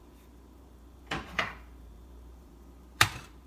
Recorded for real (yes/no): no